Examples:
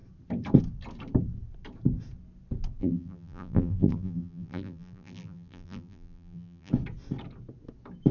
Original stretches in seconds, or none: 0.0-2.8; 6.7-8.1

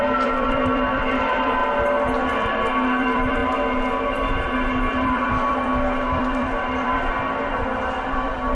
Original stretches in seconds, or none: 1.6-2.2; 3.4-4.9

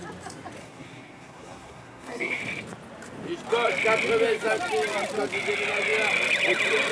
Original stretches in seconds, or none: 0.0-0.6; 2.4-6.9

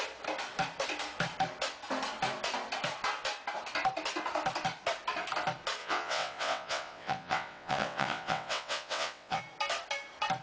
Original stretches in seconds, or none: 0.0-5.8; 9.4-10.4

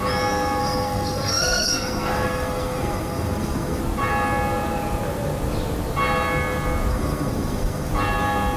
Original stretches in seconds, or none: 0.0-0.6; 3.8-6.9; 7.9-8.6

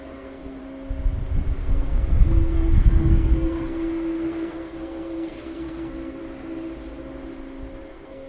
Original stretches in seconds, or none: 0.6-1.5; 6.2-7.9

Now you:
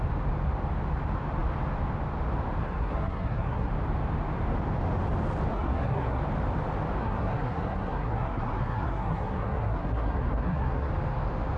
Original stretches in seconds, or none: 0.0-2.6; 3.7-5.5; 6.2-7.0; 10.9-11.6